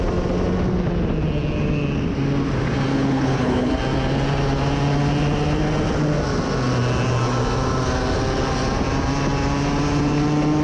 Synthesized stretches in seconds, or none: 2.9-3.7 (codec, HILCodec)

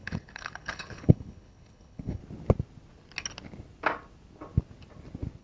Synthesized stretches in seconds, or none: 0.0-2.2 (codec, HILCodec)

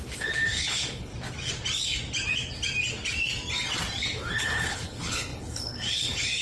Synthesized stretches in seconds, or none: 0.0-1.1 (codec, HILCodec); 4.3-6.4

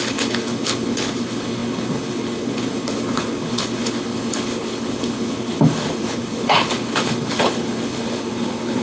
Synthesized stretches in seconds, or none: 0.0-8.8 (codec, HILCodec)

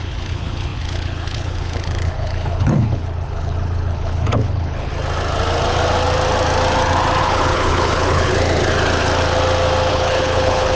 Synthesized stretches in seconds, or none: 0.0-4.9 (codec, HILCodec); 7.2-8.3; 9.9-10.8